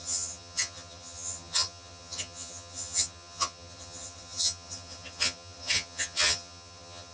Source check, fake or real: fake